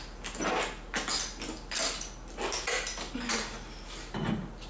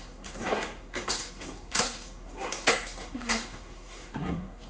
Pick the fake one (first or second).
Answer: second